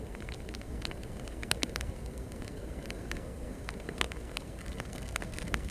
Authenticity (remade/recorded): remade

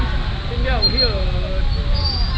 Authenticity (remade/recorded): recorded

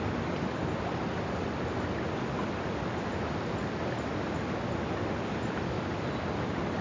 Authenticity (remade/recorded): recorded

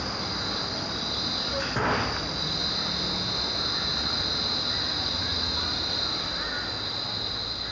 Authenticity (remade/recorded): recorded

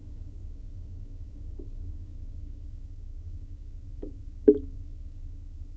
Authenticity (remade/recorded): remade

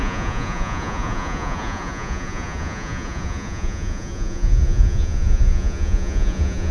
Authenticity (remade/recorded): remade